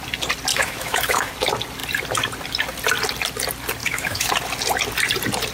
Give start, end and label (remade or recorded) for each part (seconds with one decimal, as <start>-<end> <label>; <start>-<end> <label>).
0.0-0.5 recorded; 0.5-1.3 remade; 1.3-3.8 recorded; 3.8-4.3 remade; 4.3-5.5 recorded